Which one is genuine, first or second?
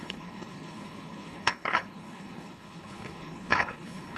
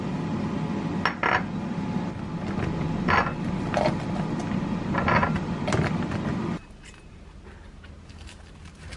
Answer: second